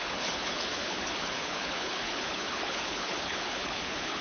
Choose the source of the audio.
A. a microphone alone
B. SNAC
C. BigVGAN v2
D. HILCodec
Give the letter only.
D